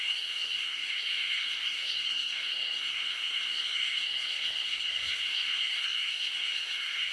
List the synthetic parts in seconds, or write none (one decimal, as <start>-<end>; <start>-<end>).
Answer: 0.0-7.1